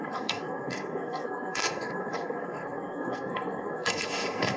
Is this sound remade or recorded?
remade